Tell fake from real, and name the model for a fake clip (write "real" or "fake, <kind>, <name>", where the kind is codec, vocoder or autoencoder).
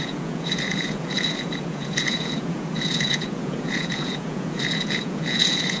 fake, vocoder, Vocos